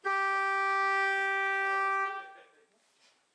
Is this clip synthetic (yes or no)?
no